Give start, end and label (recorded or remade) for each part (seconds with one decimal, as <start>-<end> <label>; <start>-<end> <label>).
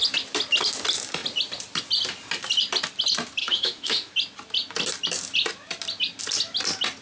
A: 0.0-3.4 recorded; 3.4-4.1 remade; 4.1-7.0 recorded